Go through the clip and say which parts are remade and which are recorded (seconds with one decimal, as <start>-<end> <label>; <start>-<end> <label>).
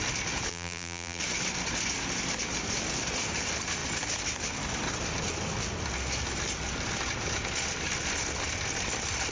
0.0-0.5 recorded; 0.5-1.2 remade; 1.2-9.3 recorded